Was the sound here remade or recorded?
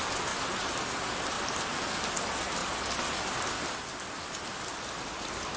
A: recorded